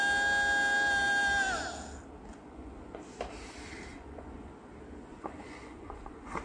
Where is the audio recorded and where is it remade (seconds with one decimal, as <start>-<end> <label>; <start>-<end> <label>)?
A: 0.0-2.3 recorded; 2.3-3.0 remade; 3.0-3.9 recorded; 3.9-4.5 remade; 4.5-5.1 recorded; 5.1-6.4 remade